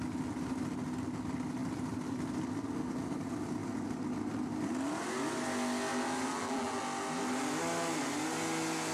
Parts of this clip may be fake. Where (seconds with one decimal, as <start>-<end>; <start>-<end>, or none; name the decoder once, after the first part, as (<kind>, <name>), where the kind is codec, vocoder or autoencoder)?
6.3-6.8 (vocoder, BigVGAN v2)